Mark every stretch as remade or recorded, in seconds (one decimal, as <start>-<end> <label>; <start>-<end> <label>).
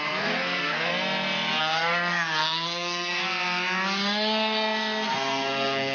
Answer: 0.0-0.9 remade; 0.9-1.6 recorded; 1.6-3.2 remade; 3.2-5.1 recorded; 5.1-5.9 remade